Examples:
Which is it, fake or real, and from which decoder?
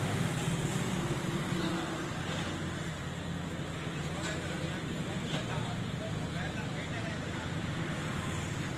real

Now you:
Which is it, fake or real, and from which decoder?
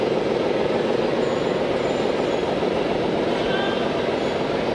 real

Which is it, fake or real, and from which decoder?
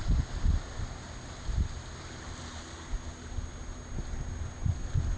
real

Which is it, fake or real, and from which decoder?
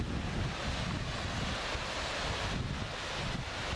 real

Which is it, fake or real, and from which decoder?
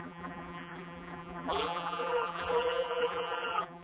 fake, vocoder, BigVGAN v2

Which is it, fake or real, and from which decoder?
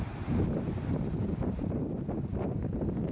real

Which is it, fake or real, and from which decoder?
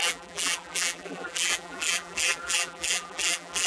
fake, vocoder, BigVGAN v2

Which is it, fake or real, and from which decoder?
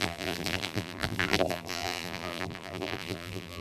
fake, vocoder, BigVGAN v2